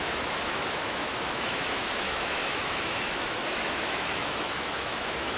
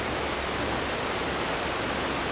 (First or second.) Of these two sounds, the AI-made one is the first